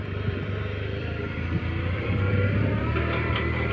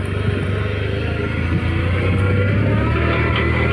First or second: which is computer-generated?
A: first